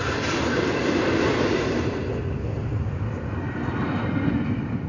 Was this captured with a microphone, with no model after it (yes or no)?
yes